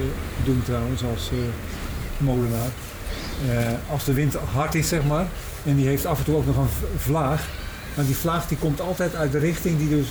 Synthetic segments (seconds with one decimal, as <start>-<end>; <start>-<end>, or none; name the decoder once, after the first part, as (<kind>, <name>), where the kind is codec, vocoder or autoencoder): 1.9-2.7 (vocoder, BigVGAN v2); 3.3-4.7; 5.6-6.9